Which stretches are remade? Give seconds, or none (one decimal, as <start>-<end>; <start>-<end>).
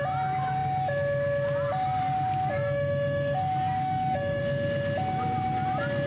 2.5-4.4